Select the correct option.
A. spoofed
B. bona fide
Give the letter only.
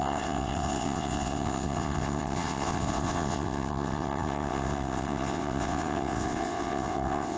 A